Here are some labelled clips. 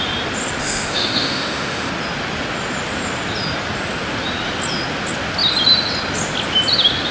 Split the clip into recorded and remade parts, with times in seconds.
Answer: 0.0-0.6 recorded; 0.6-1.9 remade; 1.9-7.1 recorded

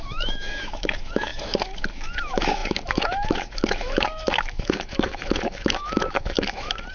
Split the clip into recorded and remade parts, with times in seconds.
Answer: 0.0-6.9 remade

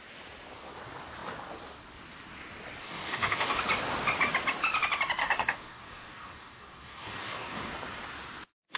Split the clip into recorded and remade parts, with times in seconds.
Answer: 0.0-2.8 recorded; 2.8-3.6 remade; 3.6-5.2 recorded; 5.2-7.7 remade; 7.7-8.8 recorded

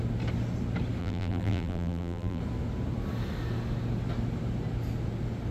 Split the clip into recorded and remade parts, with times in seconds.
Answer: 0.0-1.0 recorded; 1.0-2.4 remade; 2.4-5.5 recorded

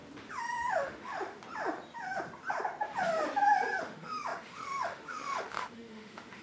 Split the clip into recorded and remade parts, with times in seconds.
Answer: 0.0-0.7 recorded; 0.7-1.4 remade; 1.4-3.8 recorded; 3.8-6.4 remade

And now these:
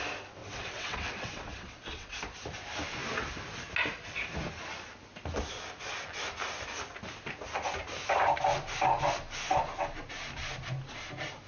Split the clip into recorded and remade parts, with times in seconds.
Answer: 0.0-0.4 recorded; 0.4-2.2 remade; 2.2-11.5 recorded

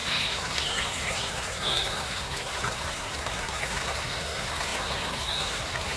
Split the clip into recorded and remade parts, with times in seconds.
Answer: 0.0-6.0 remade

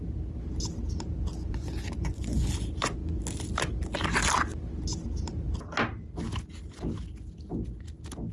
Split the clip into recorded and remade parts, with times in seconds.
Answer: 0.0-1.3 recorded; 1.3-2.5 remade; 2.5-8.3 recorded